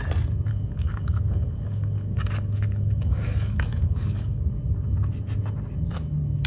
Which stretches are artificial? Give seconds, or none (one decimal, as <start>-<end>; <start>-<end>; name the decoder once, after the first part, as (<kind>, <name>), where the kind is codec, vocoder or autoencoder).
0.5-4.4 (codec, DAC)